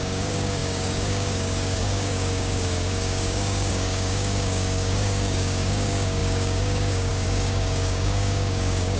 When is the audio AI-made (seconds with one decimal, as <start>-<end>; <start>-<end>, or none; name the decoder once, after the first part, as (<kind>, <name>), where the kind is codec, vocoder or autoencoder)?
0.0-9.0 (codec, DAC)